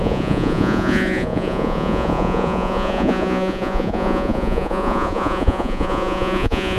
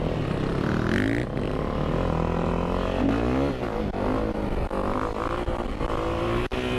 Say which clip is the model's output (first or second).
first